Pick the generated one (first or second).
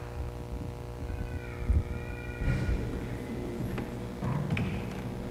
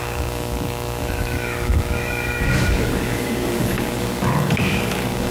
second